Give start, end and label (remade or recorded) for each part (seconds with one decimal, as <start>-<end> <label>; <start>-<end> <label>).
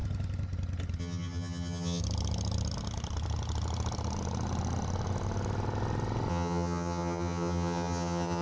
0.0-1.0 recorded; 1.0-2.0 remade; 2.0-6.3 recorded; 6.3-8.4 remade